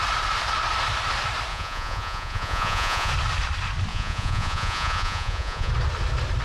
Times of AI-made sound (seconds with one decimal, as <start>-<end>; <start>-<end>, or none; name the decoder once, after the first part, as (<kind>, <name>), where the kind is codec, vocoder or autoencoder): 1.5-3.1 (vocoder, Vocos); 3.9-5.7